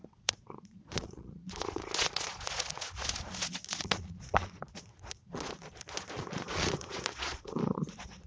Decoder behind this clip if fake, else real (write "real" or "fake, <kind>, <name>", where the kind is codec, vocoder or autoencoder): fake, vocoder, Vocos